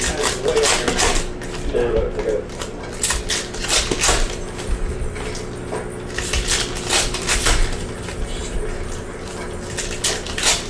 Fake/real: real